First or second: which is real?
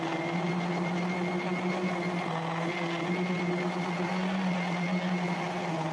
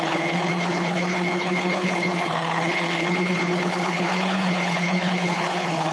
first